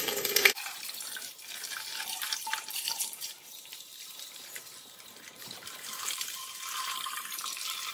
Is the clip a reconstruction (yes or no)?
yes